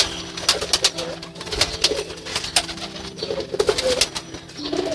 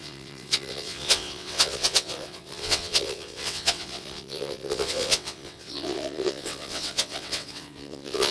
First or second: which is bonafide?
first